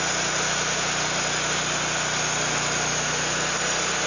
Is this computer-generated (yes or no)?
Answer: no